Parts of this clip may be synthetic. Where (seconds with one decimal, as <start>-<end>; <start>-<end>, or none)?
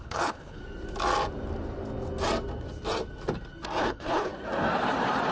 0.0-0.6; 3.8-4.3